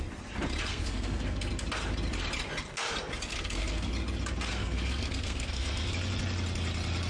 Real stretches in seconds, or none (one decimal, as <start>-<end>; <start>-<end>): 0.0-0.7; 1.5-3.3; 3.9-4.5; 5.9-7.1